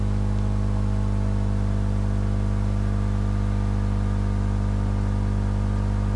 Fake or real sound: real